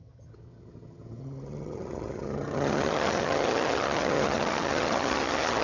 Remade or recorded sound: remade